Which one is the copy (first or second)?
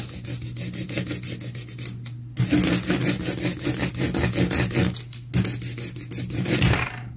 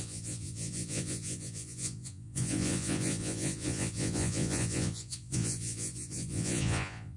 second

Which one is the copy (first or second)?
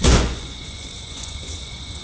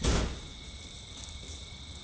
first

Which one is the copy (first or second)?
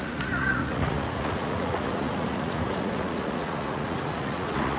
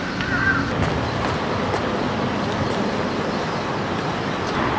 first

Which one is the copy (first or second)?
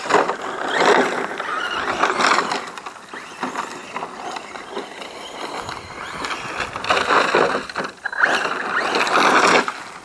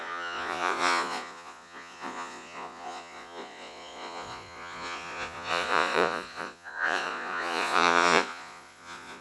second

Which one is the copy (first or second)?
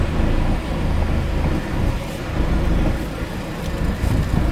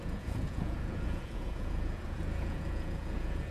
second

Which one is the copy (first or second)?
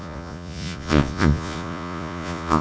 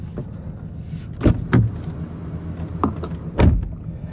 first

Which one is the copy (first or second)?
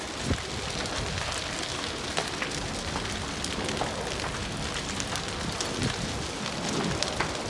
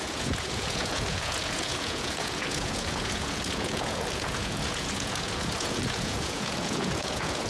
second